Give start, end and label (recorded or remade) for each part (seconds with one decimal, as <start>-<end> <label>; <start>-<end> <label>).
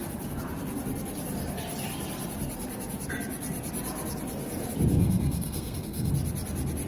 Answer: 0.0-4.9 recorded; 4.9-6.1 remade; 6.1-6.9 recorded